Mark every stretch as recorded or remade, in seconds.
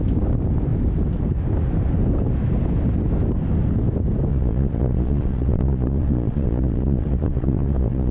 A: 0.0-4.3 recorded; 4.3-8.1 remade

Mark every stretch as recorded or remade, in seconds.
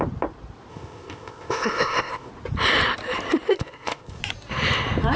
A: 0.0-0.7 recorded; 0.7-2.3 remade; 2.3-3.5 recorded; 3.5-4.2 remade; 4.2-5.2 recorded